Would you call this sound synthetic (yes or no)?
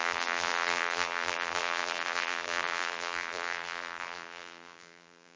yes